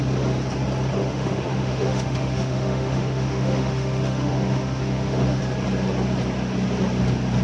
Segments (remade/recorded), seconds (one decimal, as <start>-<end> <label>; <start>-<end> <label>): 0.0-1.0 recorded; 1.0-5.4 remade; 5.4-7.4 recorded